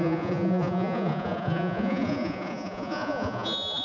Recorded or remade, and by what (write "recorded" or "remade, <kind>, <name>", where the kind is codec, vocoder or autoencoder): remade, vocoder, Vocos